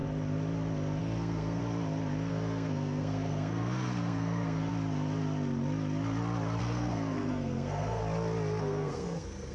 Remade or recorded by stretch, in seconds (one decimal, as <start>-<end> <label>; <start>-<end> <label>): 0.0-1.0 recorded; 1.0-1.6 remade; 1.6-2.3 recorded; 2.3-4.7 remade; 4.7-6.6 recorded; 6.6-8.0 remade; 8.0-8.6 recorded; 8.6-9.5 remade